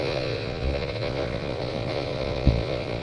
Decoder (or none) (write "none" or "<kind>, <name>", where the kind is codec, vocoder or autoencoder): vocoder, Vocos